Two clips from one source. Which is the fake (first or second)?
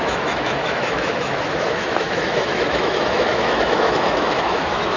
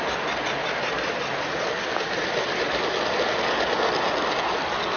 first